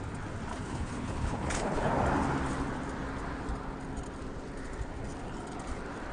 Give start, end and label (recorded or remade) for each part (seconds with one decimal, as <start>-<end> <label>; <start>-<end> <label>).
0.0-0.5 recorded; 0.5-1.9 remade; 1.9-6.1 recorded